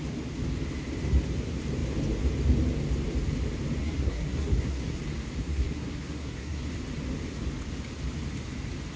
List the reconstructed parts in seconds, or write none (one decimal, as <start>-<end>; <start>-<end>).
3.8-5.0; 5.4-6.6

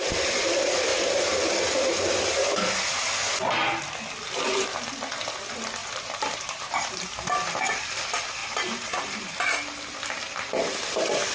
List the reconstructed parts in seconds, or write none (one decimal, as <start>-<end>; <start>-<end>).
5.8-7.0; 8.4-9.3